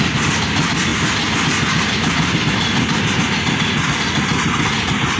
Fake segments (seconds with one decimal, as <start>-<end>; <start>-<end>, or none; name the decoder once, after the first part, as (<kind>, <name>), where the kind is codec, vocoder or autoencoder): none

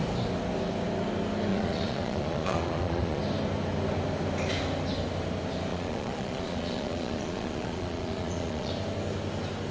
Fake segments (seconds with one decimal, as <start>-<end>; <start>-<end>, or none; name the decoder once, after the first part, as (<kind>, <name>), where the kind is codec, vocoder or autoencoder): 1.5-3.2 (vocoder, Vocos); 5.7-8.7

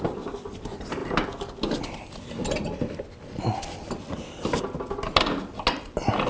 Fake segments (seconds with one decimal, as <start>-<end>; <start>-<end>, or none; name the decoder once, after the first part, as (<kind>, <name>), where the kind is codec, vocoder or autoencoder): none

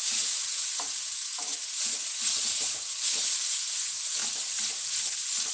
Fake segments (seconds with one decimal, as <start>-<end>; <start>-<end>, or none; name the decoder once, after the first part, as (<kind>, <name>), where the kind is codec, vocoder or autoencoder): 0.0-4.2 (vocoder, Vocos)

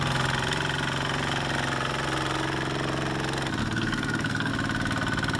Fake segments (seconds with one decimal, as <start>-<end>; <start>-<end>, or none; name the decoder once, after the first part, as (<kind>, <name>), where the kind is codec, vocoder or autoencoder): 3.6-4.5 (codec, SNAC)